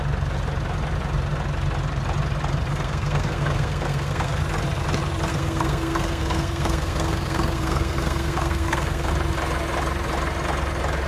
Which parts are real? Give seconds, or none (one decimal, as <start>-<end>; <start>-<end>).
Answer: 0.0-2.7; 4.4-5.3; 9.1-11.1